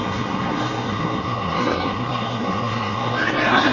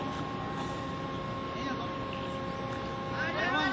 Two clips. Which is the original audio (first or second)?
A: second